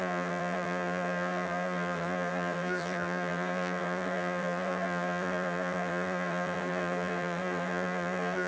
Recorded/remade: remade